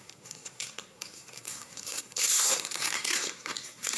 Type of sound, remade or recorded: remade